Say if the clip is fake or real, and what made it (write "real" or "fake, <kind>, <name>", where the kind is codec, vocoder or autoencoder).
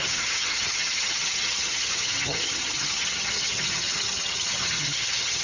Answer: fake, vocoder, HiFi-GAN